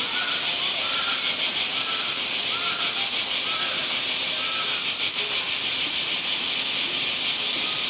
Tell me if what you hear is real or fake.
real